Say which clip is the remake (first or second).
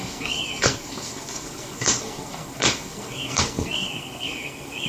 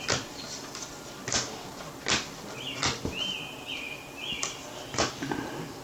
first